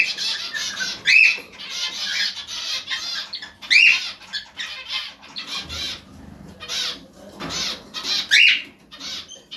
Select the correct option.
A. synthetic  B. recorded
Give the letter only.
B